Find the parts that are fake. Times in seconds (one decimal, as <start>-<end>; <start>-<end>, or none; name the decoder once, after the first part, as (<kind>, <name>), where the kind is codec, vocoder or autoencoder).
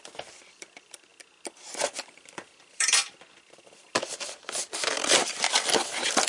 0.0-6.3 (vocoder, BigVGAN v2)